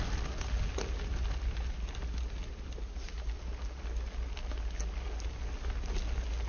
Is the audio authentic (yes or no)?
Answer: yes